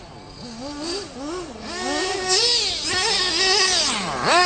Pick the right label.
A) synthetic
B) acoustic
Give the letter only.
B